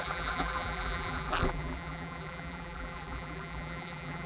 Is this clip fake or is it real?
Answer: fake